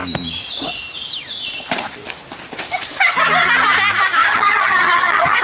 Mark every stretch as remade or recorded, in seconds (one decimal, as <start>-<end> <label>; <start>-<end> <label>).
0.0-4.2 recorded; 4.2-5.4 remade